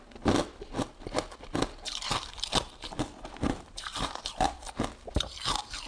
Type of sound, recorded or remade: recorded